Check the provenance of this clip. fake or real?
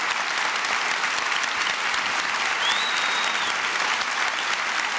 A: real